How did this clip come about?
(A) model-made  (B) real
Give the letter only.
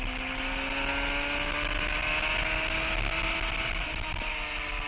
B